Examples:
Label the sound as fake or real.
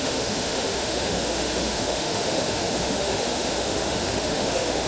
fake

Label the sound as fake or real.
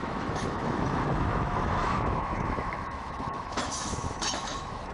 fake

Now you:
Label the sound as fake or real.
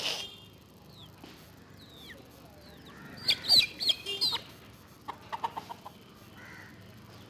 real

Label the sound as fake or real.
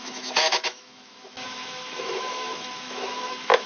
fake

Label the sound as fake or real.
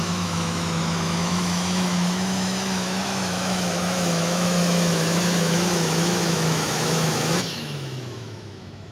fake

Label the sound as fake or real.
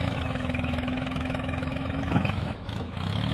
fake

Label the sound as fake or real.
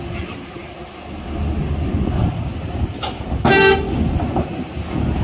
real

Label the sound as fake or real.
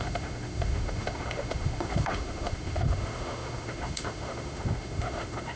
fake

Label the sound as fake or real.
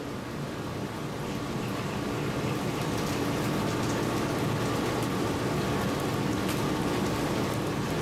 real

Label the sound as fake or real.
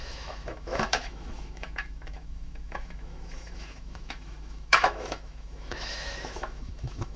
fake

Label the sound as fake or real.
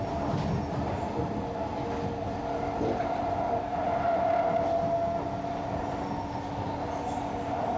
real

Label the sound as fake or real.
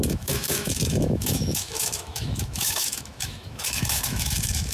fake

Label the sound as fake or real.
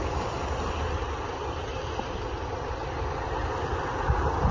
real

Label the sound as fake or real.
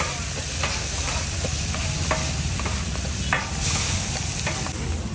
real